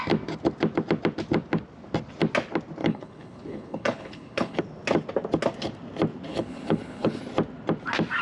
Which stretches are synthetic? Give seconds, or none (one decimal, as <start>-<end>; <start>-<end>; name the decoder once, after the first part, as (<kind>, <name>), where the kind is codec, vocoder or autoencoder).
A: 2.8-4.6 (codec, HILCodec); 6.3-7.2